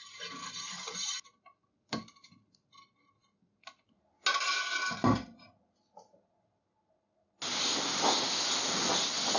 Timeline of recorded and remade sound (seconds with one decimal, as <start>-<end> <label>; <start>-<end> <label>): 0.0-9.4 recorded